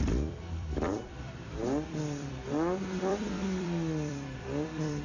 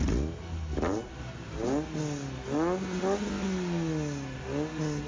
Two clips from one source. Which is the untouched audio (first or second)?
second